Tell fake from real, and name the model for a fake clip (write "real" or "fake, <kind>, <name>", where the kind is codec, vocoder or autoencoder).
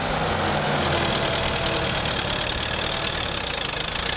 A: real